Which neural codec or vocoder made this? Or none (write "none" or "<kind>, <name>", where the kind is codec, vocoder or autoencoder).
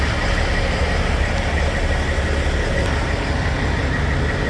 none